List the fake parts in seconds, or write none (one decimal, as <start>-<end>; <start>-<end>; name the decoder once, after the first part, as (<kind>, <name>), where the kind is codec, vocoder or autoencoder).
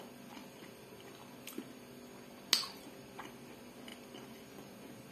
none